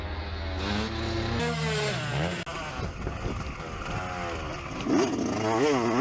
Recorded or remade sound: recorded